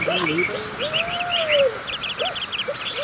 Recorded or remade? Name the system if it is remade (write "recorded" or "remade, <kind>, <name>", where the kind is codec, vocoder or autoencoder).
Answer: remade, vocoder, BigVGAN v2